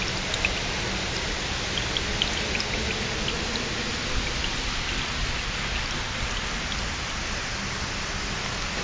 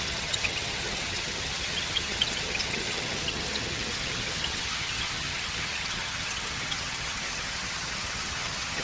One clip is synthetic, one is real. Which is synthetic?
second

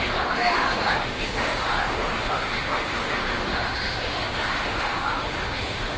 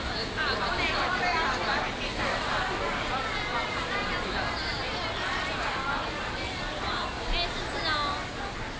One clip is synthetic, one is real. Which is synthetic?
first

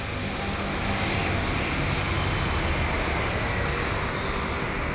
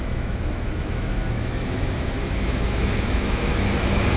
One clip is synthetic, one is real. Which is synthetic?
second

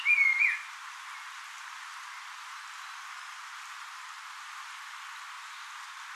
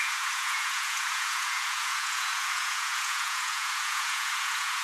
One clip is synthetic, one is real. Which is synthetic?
second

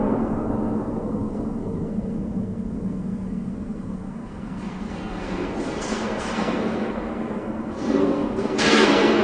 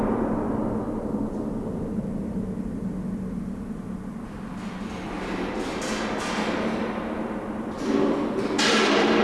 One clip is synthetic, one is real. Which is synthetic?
first